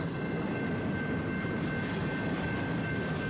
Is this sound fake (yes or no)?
no